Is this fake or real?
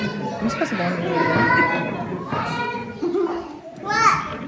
real